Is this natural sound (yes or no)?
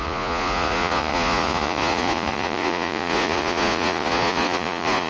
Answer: no